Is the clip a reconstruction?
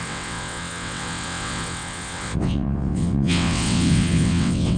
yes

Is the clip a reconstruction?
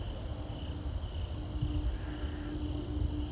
no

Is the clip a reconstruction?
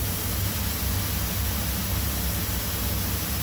no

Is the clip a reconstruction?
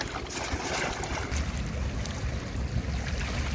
no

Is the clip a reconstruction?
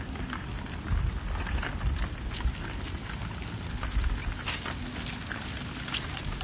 no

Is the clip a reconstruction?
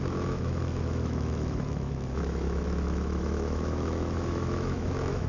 yes